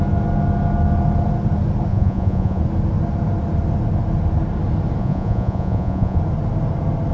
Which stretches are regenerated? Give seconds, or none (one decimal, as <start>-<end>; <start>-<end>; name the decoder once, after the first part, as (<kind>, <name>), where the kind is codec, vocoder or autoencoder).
1.9-2.6 (vocoder, Vocos); 5.0-6.2